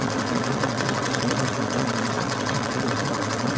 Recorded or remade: remade